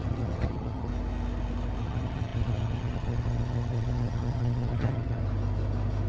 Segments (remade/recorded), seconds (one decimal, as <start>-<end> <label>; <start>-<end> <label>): 0.0-0.9 remade; 0.9-1.8 recorded; 1.8-5.2 remade; 5.2-6.1 recorded